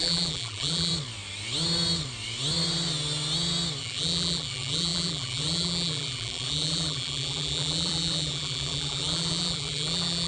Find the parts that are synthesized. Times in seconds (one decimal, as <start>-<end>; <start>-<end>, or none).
0.0-0.9; 3.8-10.3

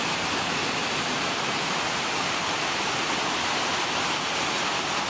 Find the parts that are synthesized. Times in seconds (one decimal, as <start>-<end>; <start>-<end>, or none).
0.8-3.4

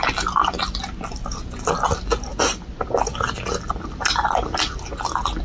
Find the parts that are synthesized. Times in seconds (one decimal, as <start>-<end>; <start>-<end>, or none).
2.3-5.4

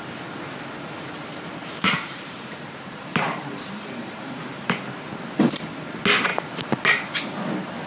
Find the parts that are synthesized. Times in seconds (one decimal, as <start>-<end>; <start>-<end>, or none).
1.6-4.6

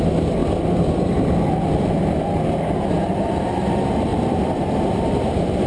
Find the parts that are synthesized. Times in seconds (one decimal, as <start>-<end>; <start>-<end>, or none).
4.1-5.7

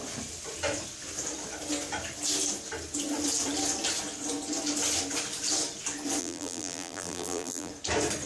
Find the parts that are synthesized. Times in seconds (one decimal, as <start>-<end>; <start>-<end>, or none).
6.2-7.7

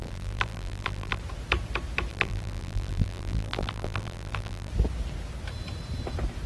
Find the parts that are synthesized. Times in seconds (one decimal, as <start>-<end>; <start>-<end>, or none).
0.0-1.2; 2.1-4.7

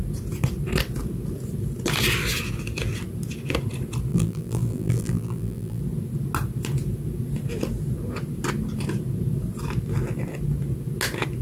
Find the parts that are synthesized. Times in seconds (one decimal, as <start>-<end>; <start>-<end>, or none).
4.1-5.8